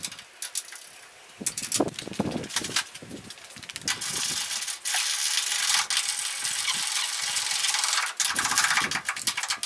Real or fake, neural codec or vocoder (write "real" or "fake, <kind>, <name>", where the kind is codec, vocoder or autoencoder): real